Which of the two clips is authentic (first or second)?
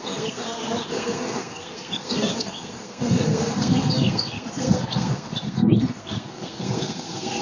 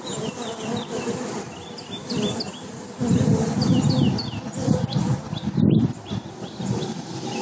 second